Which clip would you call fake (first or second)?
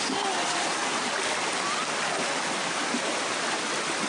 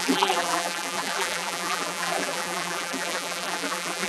second